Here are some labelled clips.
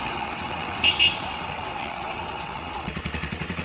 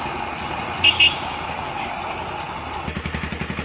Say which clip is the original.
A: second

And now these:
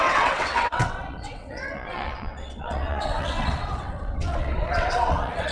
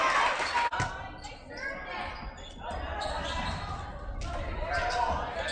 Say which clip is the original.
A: second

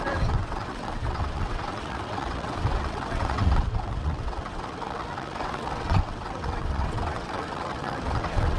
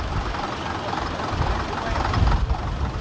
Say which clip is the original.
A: second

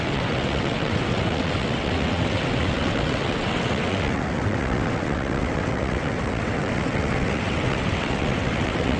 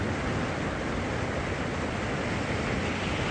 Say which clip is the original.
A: second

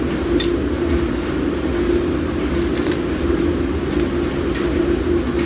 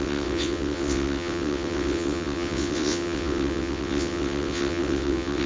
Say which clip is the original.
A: first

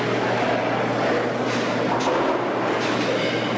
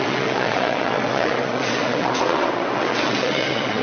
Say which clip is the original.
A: first